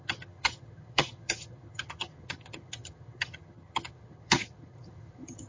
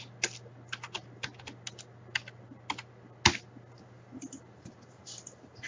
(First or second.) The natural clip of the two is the second